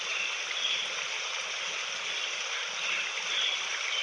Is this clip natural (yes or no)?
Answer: yes